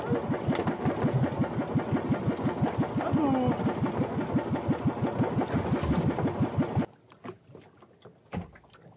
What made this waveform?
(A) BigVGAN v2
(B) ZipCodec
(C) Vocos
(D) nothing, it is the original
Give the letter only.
D